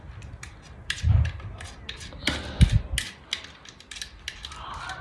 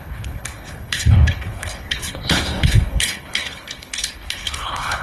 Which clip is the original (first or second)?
first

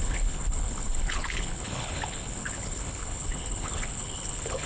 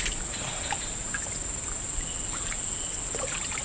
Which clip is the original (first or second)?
second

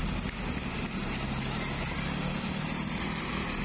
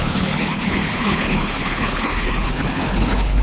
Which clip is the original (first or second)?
first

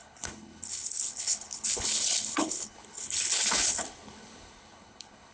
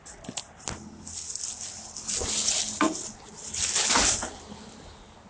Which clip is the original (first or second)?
second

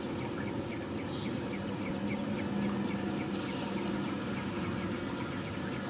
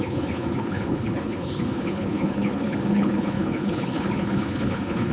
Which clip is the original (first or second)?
first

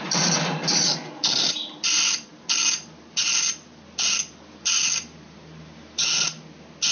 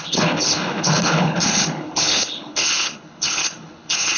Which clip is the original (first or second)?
first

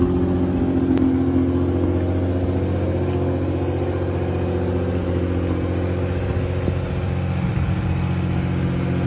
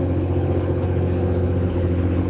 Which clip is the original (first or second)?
first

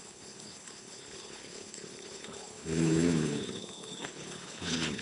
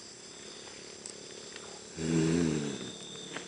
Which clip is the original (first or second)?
second